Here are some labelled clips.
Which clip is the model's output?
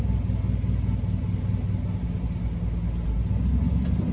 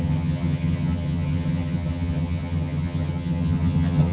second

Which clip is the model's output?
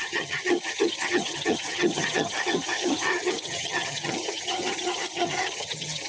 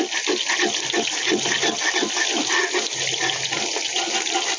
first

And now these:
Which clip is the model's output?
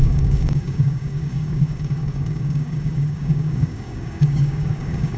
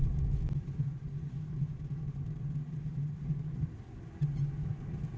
first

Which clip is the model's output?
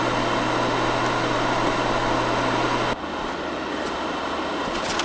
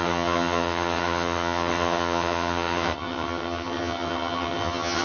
second